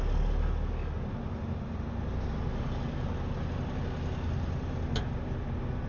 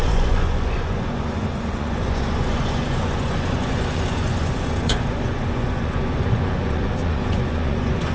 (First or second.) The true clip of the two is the first